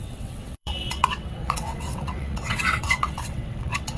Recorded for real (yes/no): no